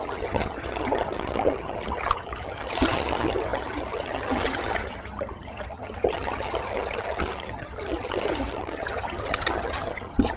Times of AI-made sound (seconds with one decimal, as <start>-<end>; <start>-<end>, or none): 0.0-10.4